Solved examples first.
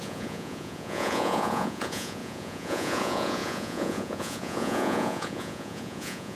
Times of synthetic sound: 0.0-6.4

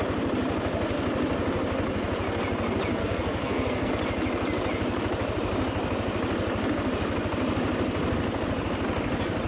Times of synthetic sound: 3.0-3.9